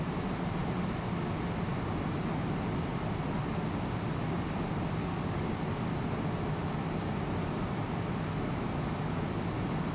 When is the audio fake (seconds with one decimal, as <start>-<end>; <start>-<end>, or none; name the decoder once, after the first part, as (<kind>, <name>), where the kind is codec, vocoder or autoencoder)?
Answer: 5.0-5.5 (codec, DAC)